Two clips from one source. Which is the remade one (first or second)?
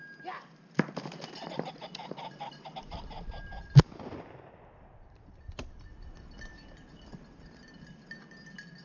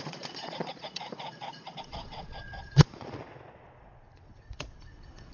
second